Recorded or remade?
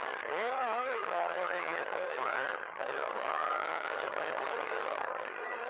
remade